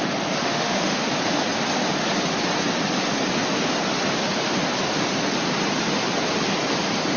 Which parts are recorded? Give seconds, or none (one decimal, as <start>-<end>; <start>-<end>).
0.0-0.4; 1.1-7.2